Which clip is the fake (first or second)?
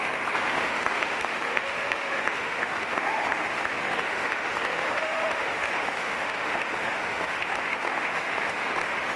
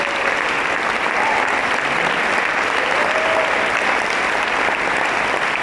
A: first